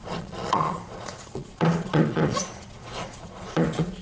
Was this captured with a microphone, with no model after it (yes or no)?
no